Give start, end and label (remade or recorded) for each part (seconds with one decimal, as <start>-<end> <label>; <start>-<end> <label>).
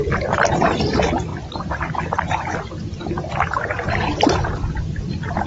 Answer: 0.0-5.5 recorded